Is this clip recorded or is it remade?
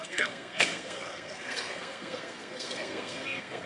remade